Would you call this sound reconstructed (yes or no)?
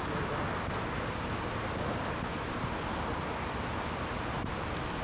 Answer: no